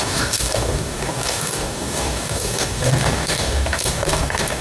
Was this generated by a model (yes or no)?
yes